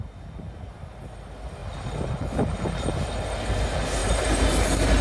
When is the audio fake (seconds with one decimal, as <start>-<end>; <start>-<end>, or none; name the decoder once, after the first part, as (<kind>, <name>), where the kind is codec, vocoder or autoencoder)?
none